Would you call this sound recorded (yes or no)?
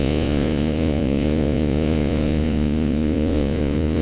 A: no